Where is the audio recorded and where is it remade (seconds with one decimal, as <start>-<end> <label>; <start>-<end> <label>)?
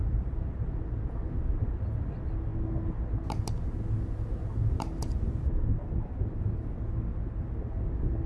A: 0.0-0.7 remade; 0.7-8.3 recorded